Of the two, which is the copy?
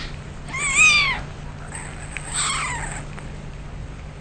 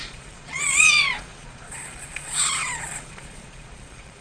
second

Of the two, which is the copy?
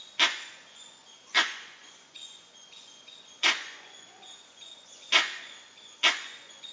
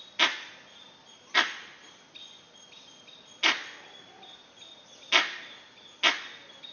first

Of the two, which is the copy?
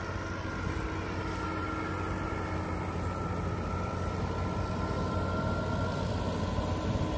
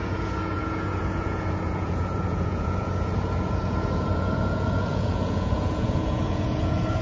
second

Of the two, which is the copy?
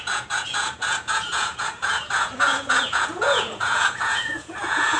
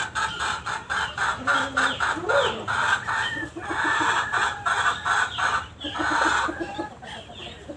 first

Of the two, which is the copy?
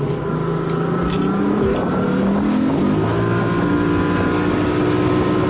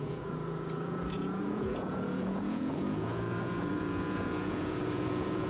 second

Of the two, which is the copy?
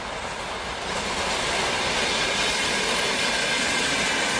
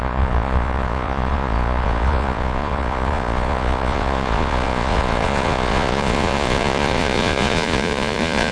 second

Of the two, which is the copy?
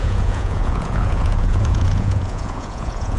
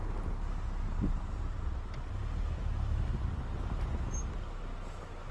first